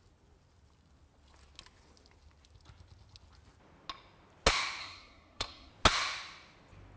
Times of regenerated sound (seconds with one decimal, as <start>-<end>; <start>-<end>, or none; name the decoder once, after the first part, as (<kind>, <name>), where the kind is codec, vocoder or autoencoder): 4.8-5.7 (codec, SNAC)